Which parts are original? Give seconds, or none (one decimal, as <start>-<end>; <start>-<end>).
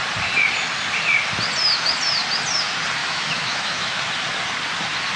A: 0.0-3.0; 4.0-5.2